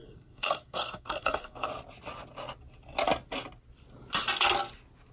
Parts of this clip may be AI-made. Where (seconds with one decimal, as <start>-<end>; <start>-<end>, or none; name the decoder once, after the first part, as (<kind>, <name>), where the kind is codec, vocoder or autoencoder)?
0.0-1.7 (codec, SNAC)